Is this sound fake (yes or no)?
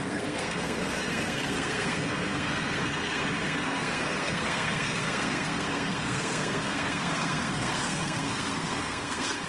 yes